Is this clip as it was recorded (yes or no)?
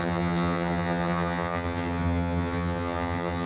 no